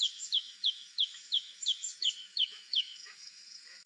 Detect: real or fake fake